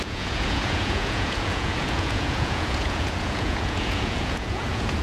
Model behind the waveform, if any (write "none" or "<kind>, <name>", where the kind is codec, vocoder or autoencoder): vocoder, Vocos